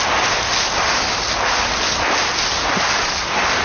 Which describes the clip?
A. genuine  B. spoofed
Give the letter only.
A